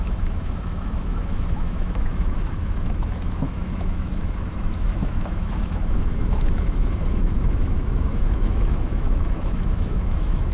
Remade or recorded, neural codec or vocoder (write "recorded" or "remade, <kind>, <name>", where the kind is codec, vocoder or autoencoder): remade, autoencoder, DAC-VAE